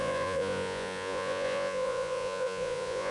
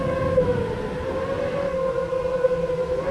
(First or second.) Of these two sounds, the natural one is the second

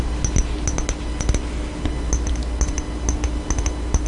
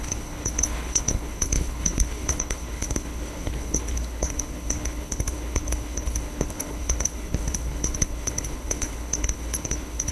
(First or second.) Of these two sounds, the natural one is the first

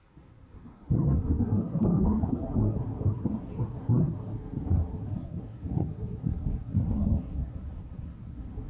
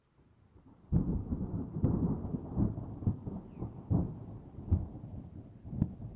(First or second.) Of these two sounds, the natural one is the second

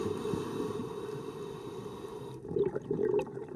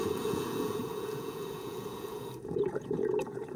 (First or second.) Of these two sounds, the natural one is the first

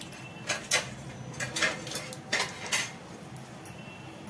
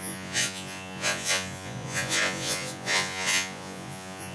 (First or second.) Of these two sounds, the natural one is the first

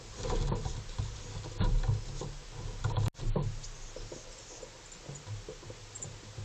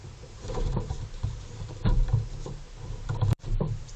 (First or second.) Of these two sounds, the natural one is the first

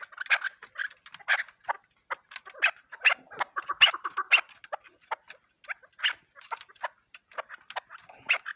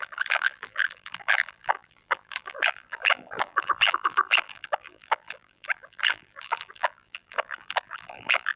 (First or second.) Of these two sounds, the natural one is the first